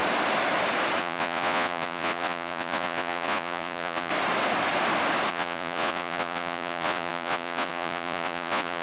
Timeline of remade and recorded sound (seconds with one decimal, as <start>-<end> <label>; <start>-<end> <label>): 0.0-1.0 recorded; 1.0-4.1 remade; 4.1-5.3 recorded; 5.3-8.8 remade